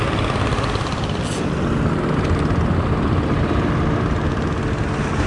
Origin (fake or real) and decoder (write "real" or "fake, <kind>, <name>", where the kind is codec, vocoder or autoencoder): real